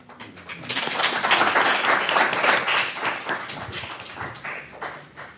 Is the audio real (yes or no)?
yes